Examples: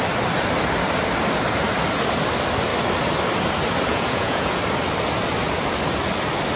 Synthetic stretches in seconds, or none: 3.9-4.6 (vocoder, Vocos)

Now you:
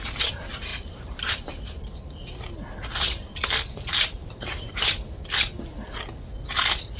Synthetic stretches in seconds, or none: 0.7-1.5 (vocoder, BigVGAN v2); 4.2-5.0

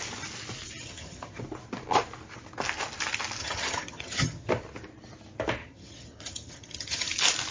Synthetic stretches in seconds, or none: 0.8-1.4 (vocoder, HiFi-GAN); 3.4-4.5; 5.6-7.1

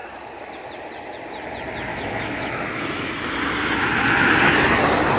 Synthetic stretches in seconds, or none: 1.9-3.1 (autoencoder, DAC-VAE)

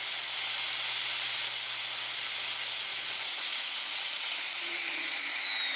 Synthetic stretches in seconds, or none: 2.9-5.3 (vocoder, Vocos)